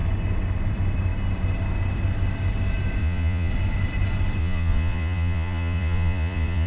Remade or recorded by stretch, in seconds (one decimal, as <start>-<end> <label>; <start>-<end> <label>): 0.0-3.0 recorded; 3.0-3.5 remade; 3.5-4.4 recorded; 4.4-6.7 remade